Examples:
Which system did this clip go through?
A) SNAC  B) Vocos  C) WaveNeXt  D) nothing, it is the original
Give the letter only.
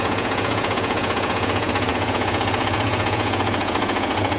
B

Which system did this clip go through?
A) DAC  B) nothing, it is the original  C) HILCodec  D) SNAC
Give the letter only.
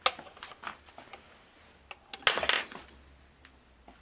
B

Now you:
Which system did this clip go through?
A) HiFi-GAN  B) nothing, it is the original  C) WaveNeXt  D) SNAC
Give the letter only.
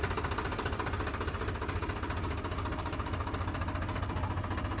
B